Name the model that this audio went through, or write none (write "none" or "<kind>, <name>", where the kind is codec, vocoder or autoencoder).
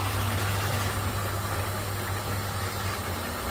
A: none